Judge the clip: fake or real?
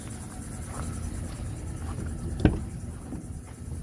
real